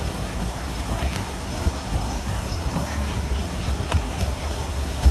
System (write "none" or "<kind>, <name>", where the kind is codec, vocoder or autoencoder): codec, SNAC